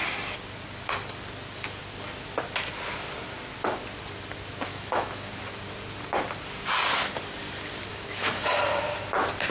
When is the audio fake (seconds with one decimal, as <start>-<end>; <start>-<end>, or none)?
4.7-5.3; 7.9-8.5